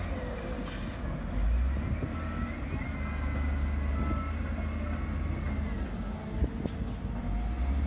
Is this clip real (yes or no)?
yes